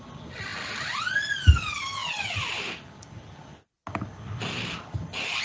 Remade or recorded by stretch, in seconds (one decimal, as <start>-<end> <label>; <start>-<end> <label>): 0.0-5.4 recorded